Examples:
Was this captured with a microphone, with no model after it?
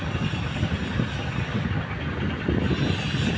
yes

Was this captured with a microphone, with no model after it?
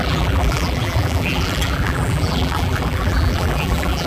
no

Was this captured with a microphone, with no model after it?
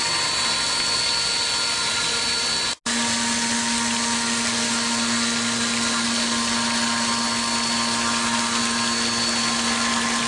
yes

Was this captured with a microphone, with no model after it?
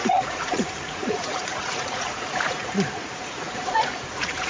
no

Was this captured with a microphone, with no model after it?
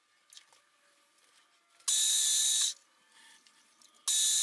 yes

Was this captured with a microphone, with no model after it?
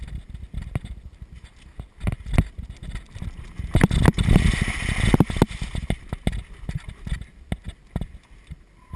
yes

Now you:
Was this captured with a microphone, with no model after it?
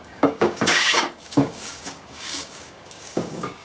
no